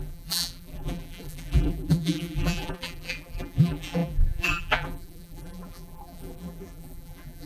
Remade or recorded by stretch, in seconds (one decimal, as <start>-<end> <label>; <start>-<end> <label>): 0.0-7.5 remade